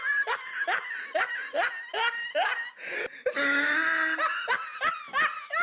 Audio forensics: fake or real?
real